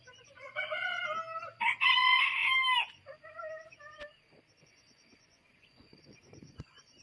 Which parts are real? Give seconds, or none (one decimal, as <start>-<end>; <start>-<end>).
1.0-1.8; 2.4-4.6